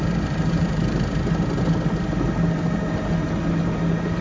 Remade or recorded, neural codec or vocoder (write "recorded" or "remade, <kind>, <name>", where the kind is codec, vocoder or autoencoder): recorded